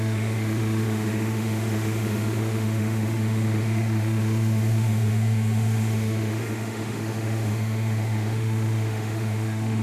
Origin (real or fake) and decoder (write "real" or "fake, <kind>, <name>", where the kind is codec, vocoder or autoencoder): fake, autoencoder, DAC-VAE